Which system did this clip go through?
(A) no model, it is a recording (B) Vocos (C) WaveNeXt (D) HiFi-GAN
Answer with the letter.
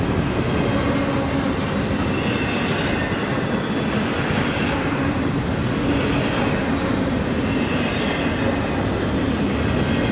A